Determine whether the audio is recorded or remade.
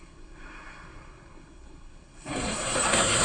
remade